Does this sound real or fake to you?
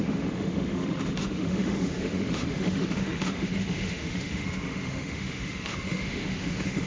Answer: fake